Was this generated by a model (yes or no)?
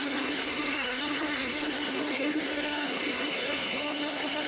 yes